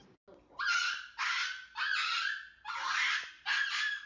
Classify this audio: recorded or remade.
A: recorded